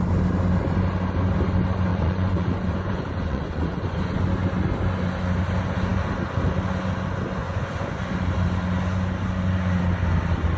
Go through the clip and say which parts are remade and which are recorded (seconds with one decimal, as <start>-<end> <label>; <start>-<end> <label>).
0.0-1.9 recorded; 1.9-4.2 remade; 4.2-7.4 recorded; 7.4-8.0 remade; 8.0-10.6 recorded